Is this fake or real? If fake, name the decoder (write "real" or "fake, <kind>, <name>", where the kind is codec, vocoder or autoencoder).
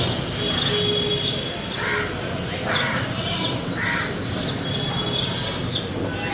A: real